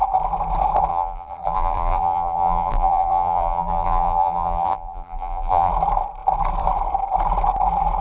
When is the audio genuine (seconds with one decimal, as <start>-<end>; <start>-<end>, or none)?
0.0-0.9; 5.7-8.0